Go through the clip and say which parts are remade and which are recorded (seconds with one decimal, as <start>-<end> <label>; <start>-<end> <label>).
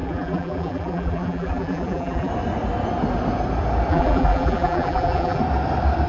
0.0-2.3 remade; 2.3-3.9 recorded; 3.9-5.4 remade; 5.4-6.1 recorded